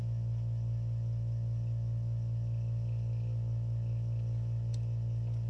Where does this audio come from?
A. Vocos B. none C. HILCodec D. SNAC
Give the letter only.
B